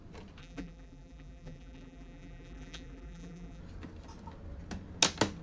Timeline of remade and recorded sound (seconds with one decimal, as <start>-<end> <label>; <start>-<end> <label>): 0.0-0.4 recorded; 0.4-3.6 remade; 3.6-5.4 recorded